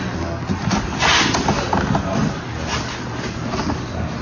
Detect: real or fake real